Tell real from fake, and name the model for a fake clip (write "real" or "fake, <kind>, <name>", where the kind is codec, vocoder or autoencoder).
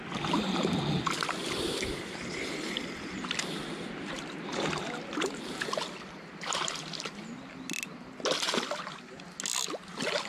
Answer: real